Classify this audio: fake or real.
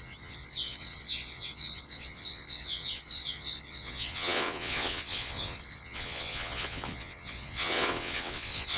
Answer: fake